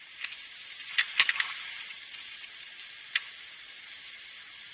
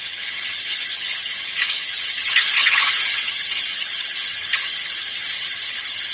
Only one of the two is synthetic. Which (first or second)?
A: second